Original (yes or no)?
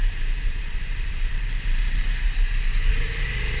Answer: no